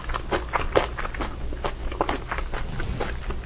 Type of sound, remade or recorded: recorded